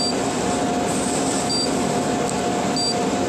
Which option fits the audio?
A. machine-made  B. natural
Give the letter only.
B